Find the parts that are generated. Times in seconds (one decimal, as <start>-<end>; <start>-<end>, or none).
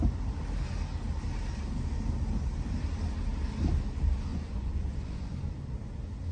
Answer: 4.3-5.5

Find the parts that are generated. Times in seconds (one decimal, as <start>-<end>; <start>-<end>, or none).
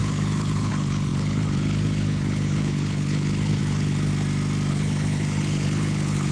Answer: 0.0-4.1; 4.7-6.3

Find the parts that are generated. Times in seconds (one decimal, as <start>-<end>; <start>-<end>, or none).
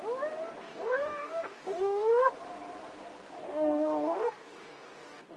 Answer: 0.6-2.3; 3.4-5.4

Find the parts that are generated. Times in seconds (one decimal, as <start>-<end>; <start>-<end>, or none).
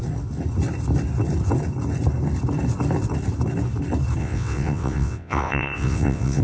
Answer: 4.2-6.4